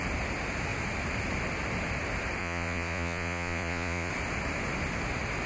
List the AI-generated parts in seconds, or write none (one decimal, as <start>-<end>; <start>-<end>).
2.4-4.1